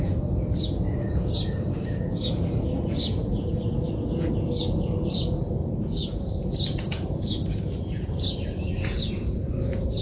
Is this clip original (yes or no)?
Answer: no